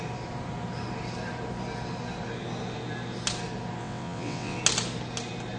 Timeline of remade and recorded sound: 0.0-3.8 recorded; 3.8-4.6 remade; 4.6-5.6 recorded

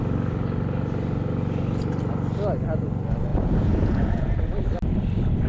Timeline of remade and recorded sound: 0.0-3.3 recorded; 3.3-4.4 remade; 4.4-5.5 recorded

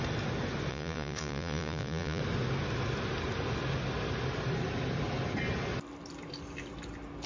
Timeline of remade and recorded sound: 0.0-0.7 recorded; 0.7-2.2 remade; 2.2-7.3 recorded

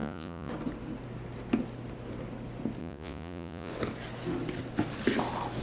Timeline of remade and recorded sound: 0.0-0.5 remade; 0.5-2.8 recorded; 2.8-3.7 remade; 3.7-5.6 recorded

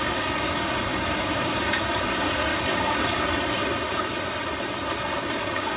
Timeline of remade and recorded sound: 0.0-2.5 remade; 2.5-5.1 recorded; 5.1-5.8 remade